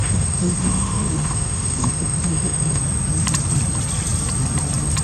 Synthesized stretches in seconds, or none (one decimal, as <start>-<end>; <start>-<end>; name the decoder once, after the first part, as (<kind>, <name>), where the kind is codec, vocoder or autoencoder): 0.0-2.8 (autoencoder, DAC-VAE)